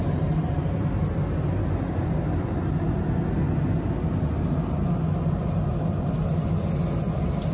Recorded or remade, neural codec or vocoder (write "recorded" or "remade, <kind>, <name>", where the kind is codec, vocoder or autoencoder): recorded